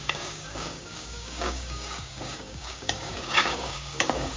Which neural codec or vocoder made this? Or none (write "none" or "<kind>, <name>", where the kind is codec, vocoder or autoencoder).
codec, DAC